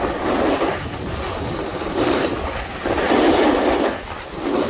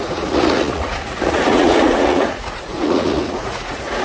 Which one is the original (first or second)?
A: first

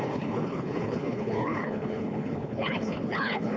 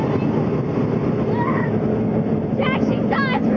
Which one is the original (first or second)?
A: second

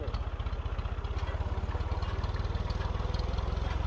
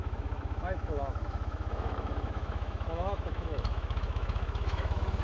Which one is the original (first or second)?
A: first